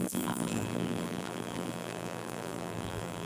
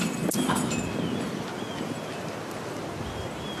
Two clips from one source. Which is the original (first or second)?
second